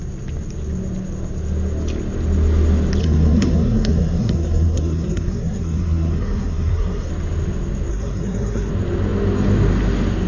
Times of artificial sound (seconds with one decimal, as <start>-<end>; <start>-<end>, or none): 3.0-7.1; 7.9-8.7